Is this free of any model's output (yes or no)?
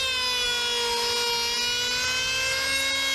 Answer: yes